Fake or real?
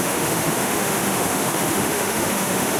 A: fake